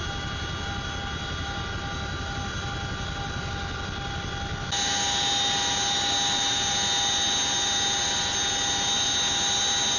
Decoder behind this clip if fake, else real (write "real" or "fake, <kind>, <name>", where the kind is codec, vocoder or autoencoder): real